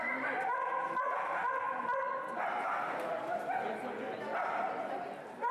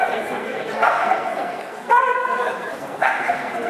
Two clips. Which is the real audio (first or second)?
first